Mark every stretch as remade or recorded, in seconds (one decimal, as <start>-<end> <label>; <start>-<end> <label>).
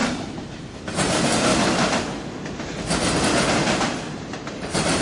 0.0-1.5 remade; 1.5-4.5 recorded; 4.5-5.0 remade